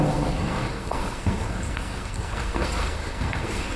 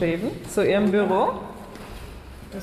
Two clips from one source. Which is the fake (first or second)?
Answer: first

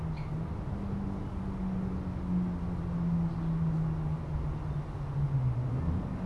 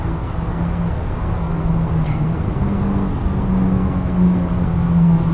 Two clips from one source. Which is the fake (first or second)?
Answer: second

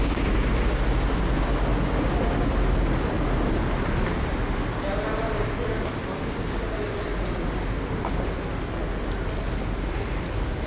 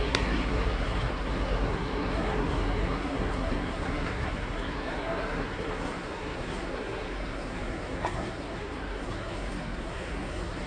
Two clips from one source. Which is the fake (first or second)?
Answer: second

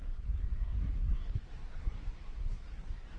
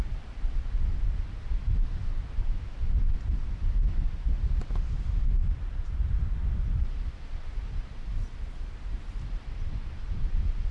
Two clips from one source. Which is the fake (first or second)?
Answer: first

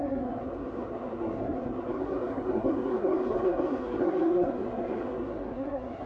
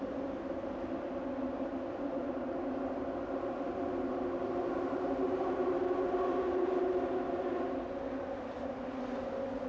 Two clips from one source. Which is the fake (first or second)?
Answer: first